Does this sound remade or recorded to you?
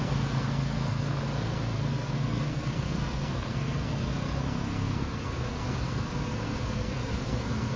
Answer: remade